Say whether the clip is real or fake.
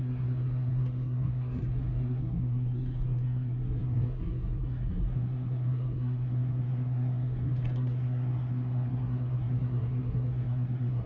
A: fake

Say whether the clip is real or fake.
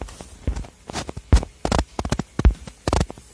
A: real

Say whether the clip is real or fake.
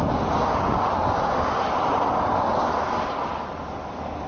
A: real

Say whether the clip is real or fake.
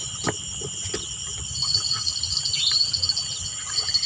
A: real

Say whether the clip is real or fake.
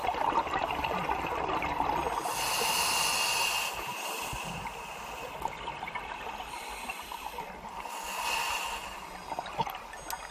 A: real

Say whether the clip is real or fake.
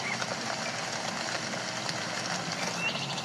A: real